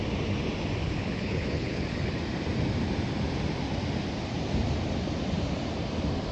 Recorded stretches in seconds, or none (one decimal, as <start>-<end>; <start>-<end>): 0.0-0.8; 2.2-6.3